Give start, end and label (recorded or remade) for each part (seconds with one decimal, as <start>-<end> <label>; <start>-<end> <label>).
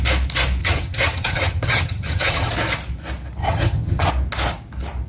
0.0-0.6 recorded; 0.6-2.5 remade; 2.5-3.4 recorded; 3.4-4.1 remade; 4.1-5.1 recorded